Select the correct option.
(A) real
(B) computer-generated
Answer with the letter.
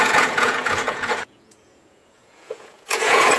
B